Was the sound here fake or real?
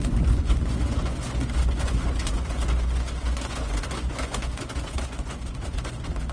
fake